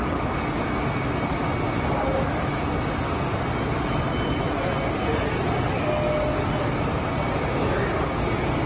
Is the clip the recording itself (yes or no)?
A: yes